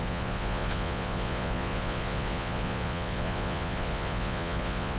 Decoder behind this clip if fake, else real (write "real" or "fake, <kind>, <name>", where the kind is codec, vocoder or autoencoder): fake, vocoder, Vocos